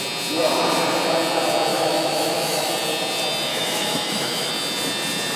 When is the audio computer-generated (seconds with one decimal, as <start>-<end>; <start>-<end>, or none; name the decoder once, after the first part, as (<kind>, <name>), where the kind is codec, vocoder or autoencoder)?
1.7-2.7 (autoencoder, DAC-VAE); 3.5-4.5